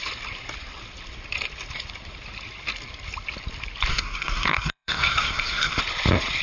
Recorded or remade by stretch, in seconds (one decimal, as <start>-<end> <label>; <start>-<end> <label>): 0.0-3.9 recorded; 3.9-5.8 remade; 5.8-6.4 recorded

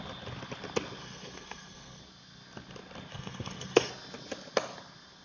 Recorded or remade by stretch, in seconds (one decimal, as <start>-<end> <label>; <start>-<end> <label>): 0.0-1.0 recorded; 1.0-2.0 remade; 2.0-3.1 recorded; 3.1-3.9 remade; 3.9-5.2 recorded

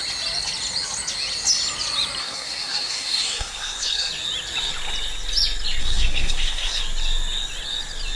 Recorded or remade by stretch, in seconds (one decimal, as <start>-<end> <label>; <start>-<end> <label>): 0.0-2.2 recorded; 2.2-4.1 remade; 4.1-5.8 recorded; 5.8-6.8 remade; 6.8-8.2 recorded

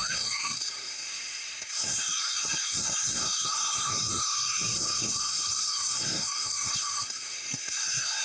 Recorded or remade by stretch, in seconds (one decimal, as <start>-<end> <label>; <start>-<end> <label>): 0.0-8.2 remade

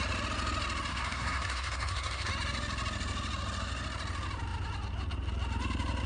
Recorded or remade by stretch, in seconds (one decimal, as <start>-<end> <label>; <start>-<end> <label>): 0.0-0.9 recorded; 0.9-2.3 remade; 2.3-6.1 recorded

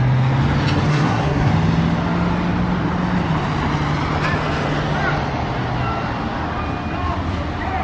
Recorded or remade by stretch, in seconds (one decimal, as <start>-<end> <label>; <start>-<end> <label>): 0.0-0.9 recorded; 0.9-1.5 remade; 1.5-7.8 recorded

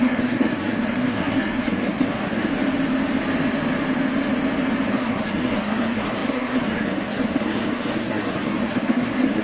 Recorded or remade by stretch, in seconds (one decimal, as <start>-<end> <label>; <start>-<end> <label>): 0.0-2.5 remade; 2.5-4.9 recorded; 4.9-9.4 remade